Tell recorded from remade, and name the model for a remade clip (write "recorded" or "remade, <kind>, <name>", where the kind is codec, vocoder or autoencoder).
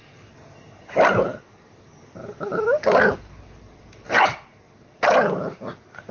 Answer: recorded